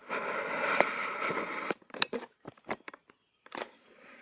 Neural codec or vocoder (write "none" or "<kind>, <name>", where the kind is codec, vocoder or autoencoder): vocoder, BigVGAN v2